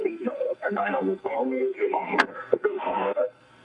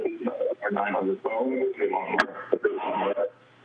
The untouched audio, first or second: second